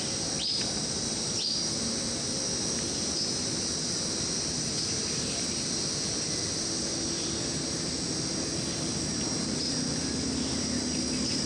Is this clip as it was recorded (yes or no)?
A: yes